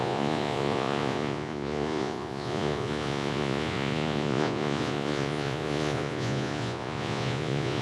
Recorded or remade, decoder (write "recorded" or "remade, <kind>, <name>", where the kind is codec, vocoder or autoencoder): remade, vocoder, Vocos